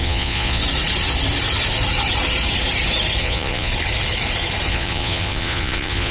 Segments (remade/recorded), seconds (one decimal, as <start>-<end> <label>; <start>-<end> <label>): 0.0-0.6 remade; 0.6-3.2 recorded; 3.2-3.7 remade; 3.7-4.7 recorded; 4.7-6.1 remade

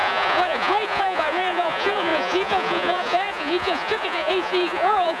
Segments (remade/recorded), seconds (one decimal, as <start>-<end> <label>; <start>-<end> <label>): 0.0-5.2 remade

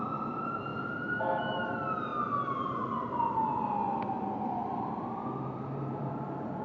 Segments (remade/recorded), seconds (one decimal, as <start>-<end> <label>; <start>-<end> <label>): 0.0-6.6 recorded